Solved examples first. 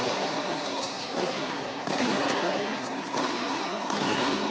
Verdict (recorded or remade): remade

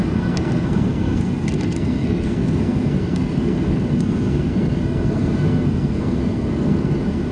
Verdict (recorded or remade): remade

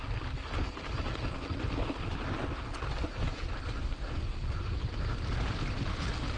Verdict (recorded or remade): recorded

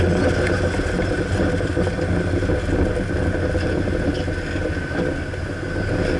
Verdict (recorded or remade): recorded